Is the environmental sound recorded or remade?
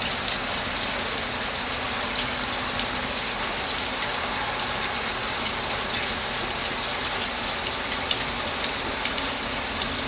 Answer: recorded